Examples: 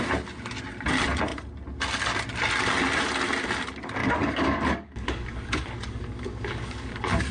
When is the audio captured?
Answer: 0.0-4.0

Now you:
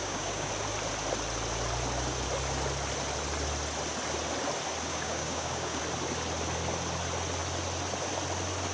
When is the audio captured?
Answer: 0.5-4.9; 5.8-8.7

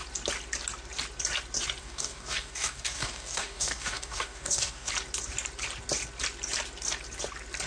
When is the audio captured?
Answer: 0.0-1.8; 4.9-7.7

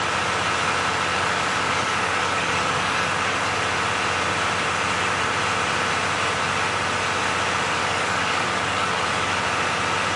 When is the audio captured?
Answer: 0.0-1.1; 3.5-7.8; 9.3-10.2